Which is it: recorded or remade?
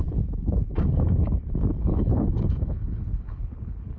remade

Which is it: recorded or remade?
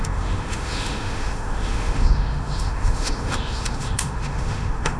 remade